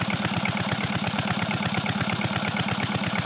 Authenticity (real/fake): real